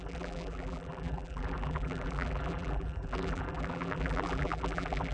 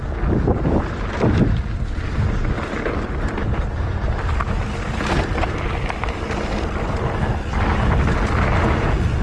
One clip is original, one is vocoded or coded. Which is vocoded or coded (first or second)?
first